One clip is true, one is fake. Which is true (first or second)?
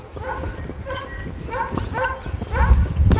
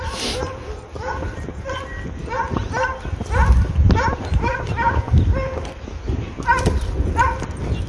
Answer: second